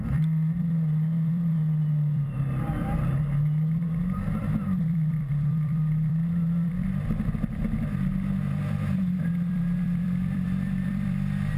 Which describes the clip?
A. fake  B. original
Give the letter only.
A